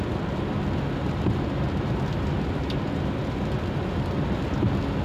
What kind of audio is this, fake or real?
real